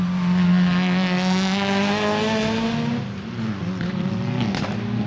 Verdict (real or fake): real